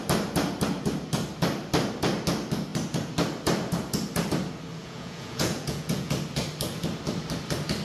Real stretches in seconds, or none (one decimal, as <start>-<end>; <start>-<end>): 0.0-4.7; 6.1-7.8